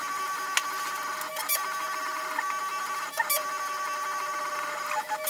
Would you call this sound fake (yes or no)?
no